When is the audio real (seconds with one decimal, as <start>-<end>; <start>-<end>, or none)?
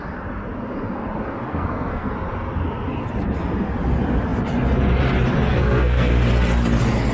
0.0-1.5; 2.1-5.5; 6.1-7.1